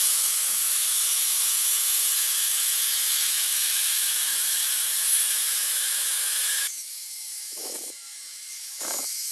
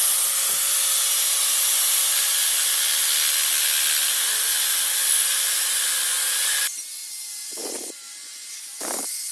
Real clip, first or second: second